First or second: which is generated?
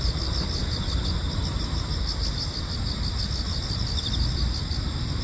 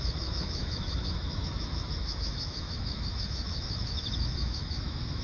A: second